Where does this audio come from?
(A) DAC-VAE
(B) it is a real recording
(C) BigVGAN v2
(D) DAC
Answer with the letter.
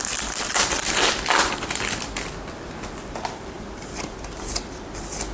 C